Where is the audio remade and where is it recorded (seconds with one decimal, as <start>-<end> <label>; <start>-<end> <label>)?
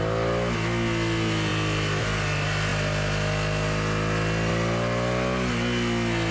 0.0-6.3 recorded